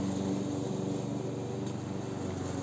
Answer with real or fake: real